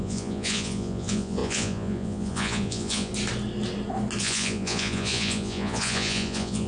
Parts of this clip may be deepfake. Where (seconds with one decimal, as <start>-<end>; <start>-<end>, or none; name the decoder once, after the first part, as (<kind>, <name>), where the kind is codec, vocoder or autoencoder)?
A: 0.0-3.1 (vocoder, Vocos); 4.2-6.7